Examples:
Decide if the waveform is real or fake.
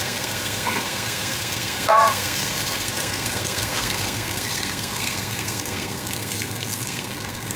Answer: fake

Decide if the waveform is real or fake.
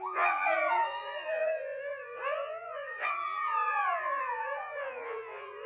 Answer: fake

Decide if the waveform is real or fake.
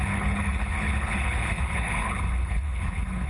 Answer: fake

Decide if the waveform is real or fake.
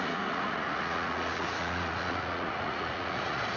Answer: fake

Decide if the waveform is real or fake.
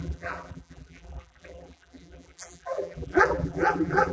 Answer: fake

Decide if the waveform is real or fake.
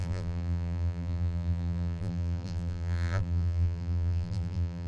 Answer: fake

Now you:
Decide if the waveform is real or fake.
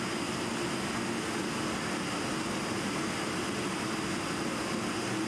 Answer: real